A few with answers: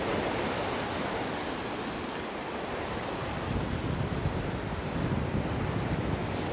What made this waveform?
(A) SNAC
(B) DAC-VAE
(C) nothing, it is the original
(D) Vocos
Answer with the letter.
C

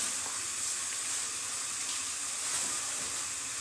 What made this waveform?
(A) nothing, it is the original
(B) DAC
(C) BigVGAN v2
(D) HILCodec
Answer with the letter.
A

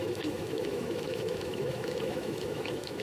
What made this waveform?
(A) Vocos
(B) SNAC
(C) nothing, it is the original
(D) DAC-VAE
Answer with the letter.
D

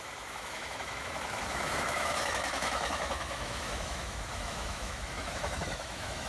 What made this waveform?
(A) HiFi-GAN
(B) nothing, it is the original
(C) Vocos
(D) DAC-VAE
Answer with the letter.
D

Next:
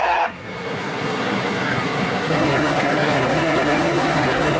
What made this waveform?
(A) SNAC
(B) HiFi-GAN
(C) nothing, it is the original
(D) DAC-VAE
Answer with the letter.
A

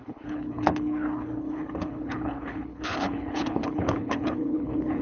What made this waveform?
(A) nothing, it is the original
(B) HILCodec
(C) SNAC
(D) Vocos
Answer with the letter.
B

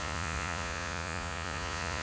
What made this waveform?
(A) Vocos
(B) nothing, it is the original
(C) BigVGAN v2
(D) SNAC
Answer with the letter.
A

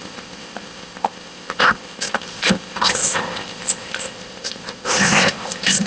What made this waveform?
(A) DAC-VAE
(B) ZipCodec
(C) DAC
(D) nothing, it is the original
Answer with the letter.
B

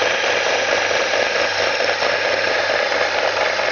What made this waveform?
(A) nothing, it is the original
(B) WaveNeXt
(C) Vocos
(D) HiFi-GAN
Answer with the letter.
A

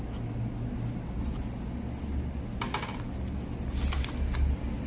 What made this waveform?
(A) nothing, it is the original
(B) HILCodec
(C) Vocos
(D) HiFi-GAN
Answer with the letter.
A